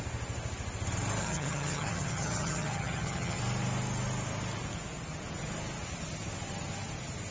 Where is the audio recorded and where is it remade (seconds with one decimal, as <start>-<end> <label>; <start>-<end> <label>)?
0.0-1.2 recorded; 1.2-3.4 remade; 3.4-7.3 recorded